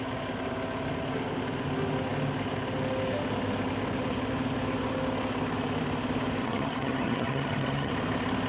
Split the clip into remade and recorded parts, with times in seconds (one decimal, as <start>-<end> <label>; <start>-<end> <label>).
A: 0.0-6.4 recorded; 6.4-7.9 remade; 7.9-8.5 recorded